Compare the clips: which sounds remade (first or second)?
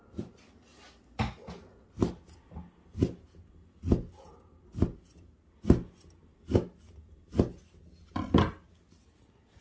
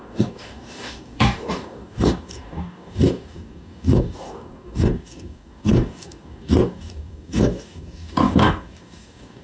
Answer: second